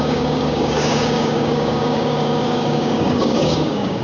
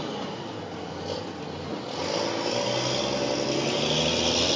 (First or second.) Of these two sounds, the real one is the second